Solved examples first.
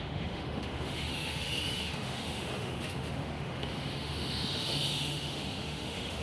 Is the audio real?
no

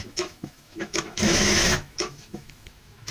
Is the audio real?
no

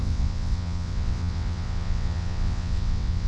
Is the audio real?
no